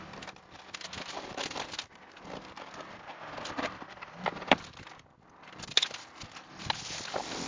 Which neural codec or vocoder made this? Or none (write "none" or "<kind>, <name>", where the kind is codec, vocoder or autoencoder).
none